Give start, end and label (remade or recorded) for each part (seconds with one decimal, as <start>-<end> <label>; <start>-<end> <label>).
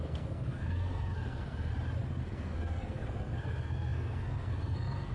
0.0-1.7 remade; 1.7-2.2 recorded; 2.2-5.1 remade